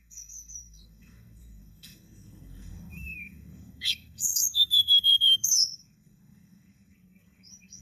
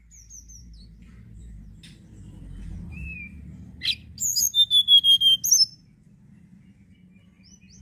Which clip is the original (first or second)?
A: second